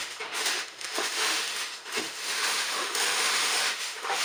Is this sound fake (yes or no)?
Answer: yes